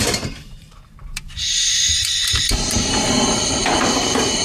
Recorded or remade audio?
remade